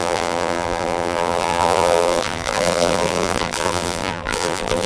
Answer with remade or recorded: remade